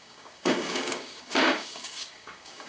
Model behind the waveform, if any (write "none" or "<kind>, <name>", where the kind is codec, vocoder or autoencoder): codec, DAC